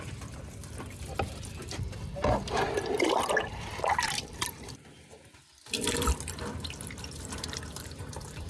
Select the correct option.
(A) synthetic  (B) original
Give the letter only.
A